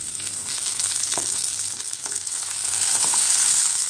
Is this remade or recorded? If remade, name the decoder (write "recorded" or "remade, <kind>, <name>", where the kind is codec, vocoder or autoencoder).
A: remade, codec, SNAC